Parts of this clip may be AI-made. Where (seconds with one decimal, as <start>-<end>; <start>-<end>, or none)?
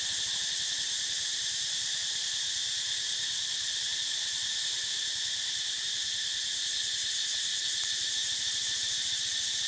1.3-5.2; 7.3-9.2